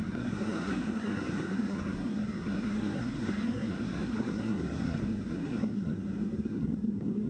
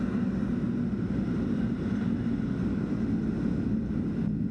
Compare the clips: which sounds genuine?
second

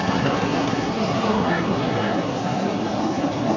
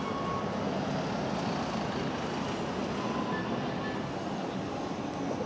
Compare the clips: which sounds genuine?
second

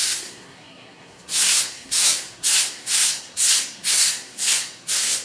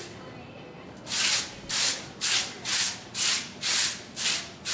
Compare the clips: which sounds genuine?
second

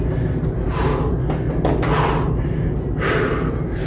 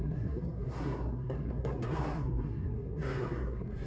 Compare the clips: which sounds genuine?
first